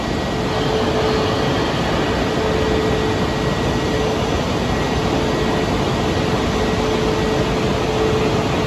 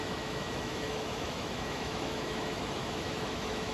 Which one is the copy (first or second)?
second